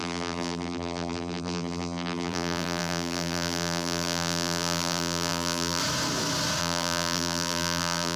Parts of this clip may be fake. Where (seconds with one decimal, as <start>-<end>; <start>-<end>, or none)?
0.0-5.8; 6.6-8.2